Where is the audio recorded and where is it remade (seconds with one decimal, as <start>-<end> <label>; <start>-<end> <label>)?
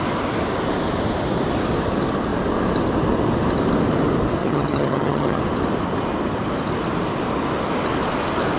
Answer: 0.0-4.4 recorded; 4.4-5.4 remade; 5.4-8.6 recorded